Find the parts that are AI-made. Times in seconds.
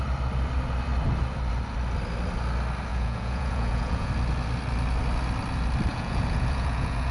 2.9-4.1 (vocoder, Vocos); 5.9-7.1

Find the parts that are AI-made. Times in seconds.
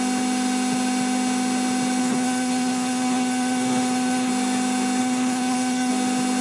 2.0-4.3 (codec, SNAC); 5.0-5.9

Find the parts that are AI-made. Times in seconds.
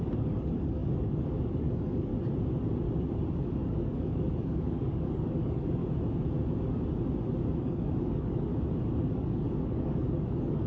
0.0-2.1 (codec, DAC); 3.3-5.8; 7.6-8.5; 9.0-10.7